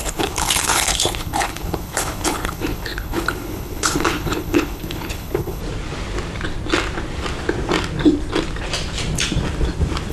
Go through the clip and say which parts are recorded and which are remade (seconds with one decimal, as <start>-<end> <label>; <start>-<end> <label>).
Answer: 0.0-5.6 remade; 5.6-10.1 recorded